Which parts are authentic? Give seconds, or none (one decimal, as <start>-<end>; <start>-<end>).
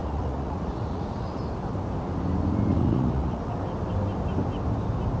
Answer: 1.4-2.7; 3.5-5.2